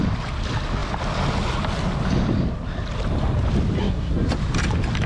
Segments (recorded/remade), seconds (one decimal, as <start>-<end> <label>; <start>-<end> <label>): 0.0-3.8 recorded; 3.8-4.3 remade; 4.3-5.1 recorded